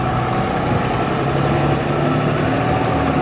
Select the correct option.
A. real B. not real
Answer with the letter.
A